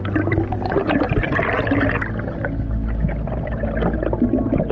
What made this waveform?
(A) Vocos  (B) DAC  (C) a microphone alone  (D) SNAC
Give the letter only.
C